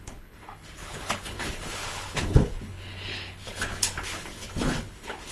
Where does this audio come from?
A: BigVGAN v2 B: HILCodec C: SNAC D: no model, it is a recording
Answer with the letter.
B